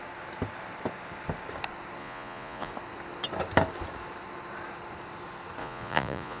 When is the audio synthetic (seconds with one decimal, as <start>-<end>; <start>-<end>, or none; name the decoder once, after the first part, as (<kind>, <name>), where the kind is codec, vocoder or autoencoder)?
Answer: 2.0-2.7 (vocoder, Vocos); 5.6-6.4